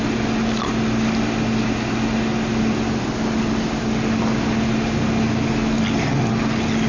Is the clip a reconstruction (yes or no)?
yes